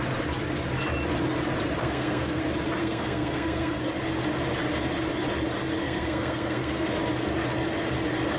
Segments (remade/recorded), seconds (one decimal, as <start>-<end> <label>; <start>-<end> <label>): 0.0-1.8 recorded; 1.8-2.4 remade; 2.4-2.8 recorded; 2.8-3.8 remade; 3.8-5.8 recorded; 5.8-6.9 remade; 6.9-8.4 recorded